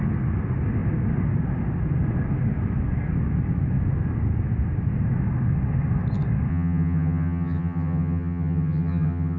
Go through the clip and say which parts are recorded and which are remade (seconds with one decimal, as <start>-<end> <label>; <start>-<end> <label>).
0.0-6.5 recorded; 6.5-9.4 remade